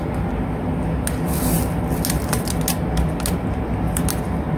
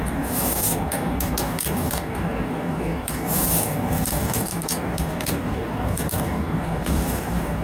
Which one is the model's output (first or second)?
second